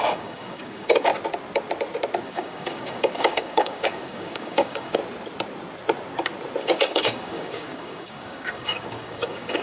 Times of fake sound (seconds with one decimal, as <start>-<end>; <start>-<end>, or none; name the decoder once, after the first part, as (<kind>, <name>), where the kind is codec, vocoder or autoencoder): 0.0-1.1 (codec, DAC); 2.2-5.0; 6.6-9.6